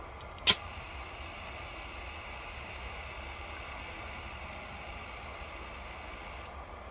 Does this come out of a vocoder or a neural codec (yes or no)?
no